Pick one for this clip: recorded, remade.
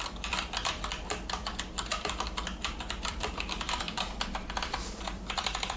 remade